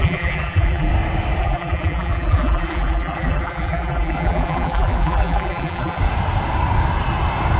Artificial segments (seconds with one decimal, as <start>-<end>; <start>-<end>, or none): 0.0-0.9; 1.4-6.0